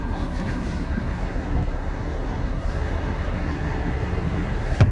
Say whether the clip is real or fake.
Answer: fake